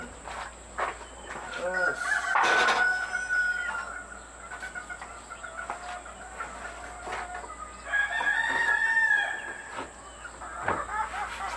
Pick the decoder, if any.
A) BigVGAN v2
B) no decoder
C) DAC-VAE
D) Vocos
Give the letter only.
B